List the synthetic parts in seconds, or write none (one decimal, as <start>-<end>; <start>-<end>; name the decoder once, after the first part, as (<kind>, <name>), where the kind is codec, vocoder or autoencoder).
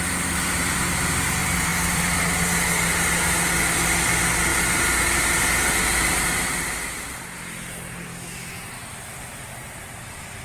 8.1-8.6 (autoencoder, DAC-VAE)